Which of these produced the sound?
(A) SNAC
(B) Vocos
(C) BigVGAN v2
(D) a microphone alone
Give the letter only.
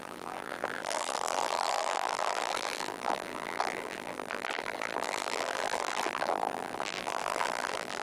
C